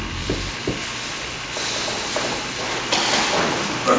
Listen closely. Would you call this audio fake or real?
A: real